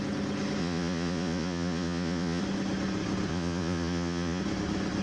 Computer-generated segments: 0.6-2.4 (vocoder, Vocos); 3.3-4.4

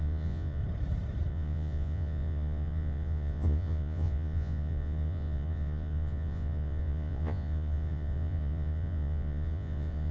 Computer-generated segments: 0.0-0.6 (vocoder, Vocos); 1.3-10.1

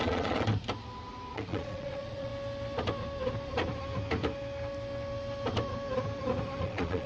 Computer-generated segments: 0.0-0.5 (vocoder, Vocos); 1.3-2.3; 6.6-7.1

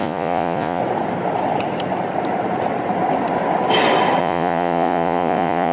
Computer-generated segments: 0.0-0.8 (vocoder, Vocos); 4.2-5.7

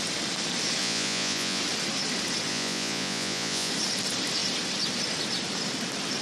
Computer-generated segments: 0.8-1.6 (vocoder, Vocos); 2.5-3.7